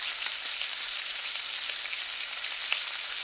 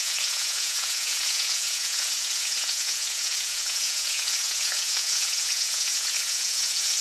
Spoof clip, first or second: second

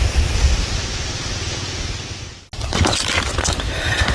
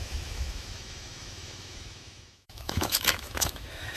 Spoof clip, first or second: second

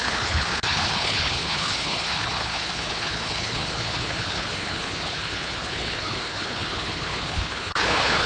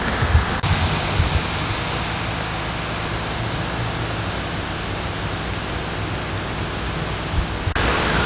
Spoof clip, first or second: first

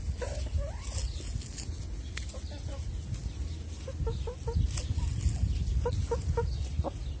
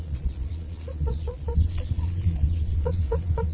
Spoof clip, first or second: second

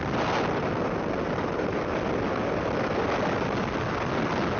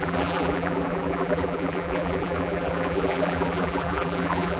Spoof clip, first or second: second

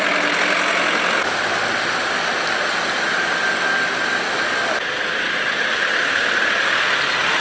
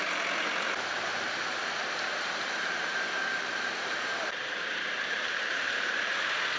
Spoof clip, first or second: second